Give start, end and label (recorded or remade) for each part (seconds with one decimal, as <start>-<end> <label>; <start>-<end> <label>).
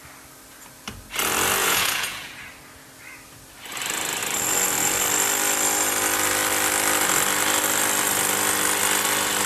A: 0.0-1.6 recorded; 1.6-2.3 remade; 2.3-9.5 recorded